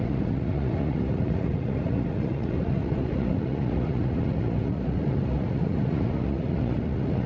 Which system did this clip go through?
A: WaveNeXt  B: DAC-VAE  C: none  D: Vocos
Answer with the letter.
D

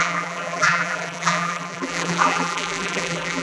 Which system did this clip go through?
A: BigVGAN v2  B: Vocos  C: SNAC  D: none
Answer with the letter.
A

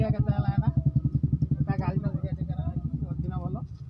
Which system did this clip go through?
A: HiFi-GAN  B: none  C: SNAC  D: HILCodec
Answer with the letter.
B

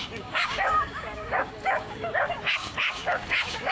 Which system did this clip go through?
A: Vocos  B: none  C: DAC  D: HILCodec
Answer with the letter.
C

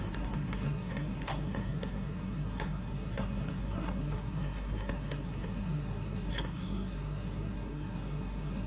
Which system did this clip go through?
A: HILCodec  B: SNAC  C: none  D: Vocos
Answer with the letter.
B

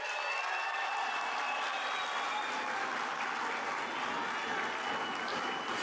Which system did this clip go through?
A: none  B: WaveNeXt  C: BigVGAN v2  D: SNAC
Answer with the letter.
A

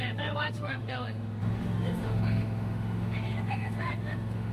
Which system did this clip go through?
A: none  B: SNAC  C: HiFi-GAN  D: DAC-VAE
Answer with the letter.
D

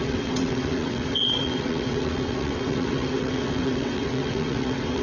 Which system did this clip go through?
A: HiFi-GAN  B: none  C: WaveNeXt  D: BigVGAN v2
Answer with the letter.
C